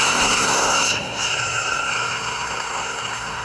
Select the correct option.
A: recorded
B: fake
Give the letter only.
B